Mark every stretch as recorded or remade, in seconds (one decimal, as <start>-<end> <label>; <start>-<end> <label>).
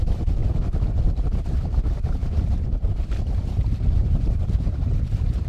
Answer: 0.0-0.4 remade; 0.4-1.1 recorded; 1.1-2.2 remade; 2.2-3.7 recorded; 3.7-5.5 remade